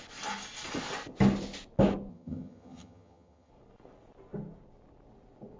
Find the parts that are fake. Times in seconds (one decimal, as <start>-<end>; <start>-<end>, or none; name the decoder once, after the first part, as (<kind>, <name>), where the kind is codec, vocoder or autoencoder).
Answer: 2.1-3.5 (vocoder, HiFi-GAN)